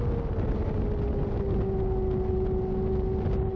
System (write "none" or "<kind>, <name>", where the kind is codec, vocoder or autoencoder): none